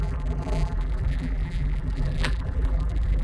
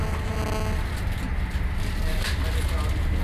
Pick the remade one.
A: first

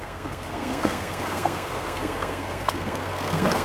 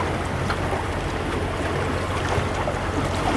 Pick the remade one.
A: first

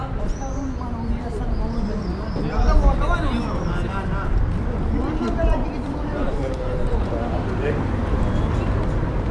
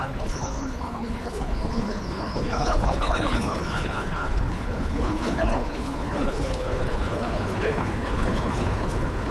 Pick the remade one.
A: second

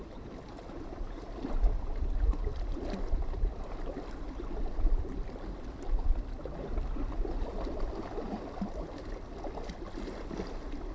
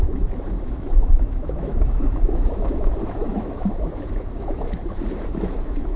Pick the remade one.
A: second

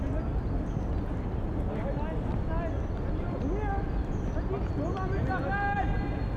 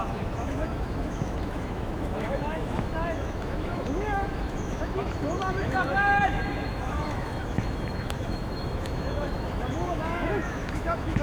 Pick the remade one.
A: second